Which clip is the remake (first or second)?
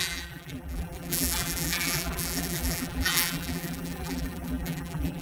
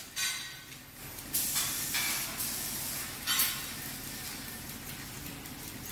first